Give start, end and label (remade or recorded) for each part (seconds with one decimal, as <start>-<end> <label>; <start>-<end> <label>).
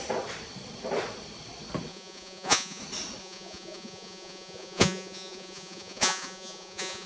0.0-1.9 recorded; 1.9-2.8 remade; 2.8-3.2 recorded; 3.2-7.1 remade